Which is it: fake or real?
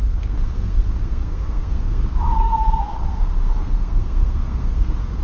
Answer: fake